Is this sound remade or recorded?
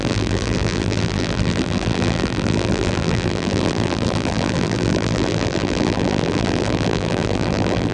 remade